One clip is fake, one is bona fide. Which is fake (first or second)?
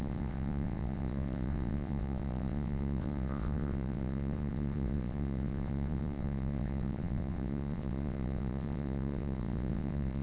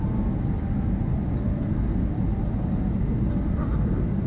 first